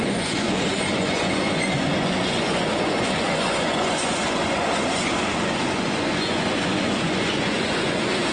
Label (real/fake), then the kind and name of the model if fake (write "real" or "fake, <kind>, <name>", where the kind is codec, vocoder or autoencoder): fake, vocoder, Vocos